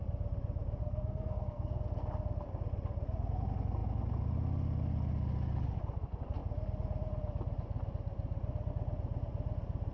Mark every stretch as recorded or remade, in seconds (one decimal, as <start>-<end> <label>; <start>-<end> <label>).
0.0-0.8 recorded; 0.8-1.8 remade; 1.8-9.9 recorded